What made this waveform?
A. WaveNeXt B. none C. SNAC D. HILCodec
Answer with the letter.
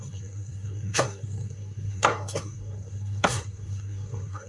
C